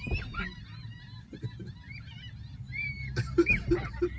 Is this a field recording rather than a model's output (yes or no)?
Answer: no